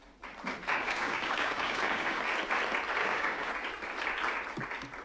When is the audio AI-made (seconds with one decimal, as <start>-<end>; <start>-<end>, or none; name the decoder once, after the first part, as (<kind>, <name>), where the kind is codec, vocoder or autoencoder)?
0.7-2.2 (codec, DAC); 3.0-3.5